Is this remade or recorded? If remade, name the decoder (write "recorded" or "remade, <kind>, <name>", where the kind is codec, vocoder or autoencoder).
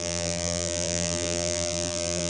remade, vocoder, BigVGAN v2